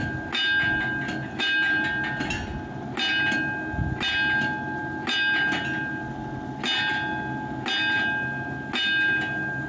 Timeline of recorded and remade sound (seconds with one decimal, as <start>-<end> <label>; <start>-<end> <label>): 0.0-9.7 recorded